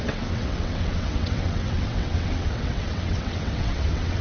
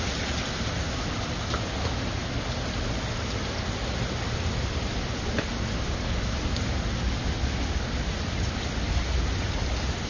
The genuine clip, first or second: second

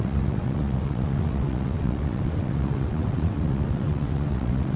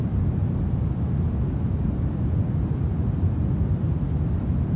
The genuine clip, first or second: second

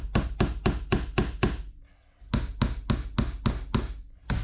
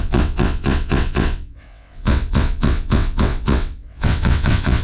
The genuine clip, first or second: first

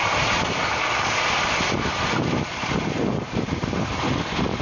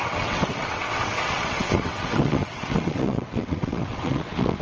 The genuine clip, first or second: first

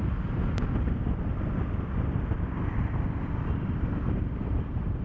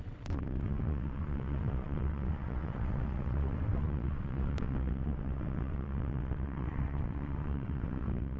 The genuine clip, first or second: first